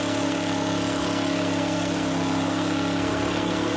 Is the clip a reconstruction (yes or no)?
yes